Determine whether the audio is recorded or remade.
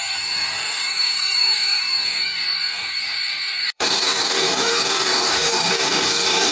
remade